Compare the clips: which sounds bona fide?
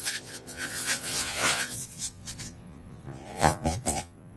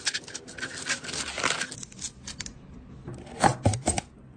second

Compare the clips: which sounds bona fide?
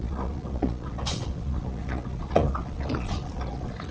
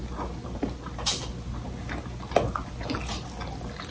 second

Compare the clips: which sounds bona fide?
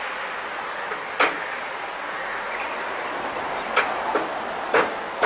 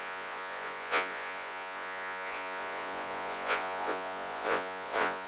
first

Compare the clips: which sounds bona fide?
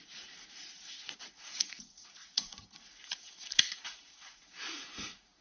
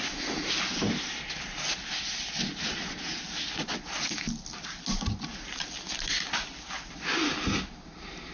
second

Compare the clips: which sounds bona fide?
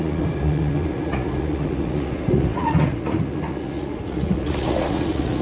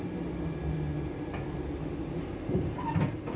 second